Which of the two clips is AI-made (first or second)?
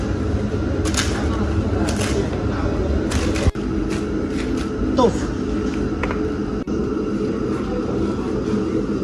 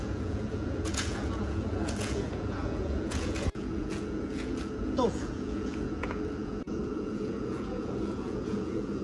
second